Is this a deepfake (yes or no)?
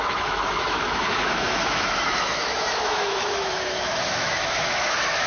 yes